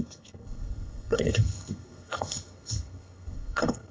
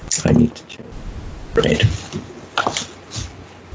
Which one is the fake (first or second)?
first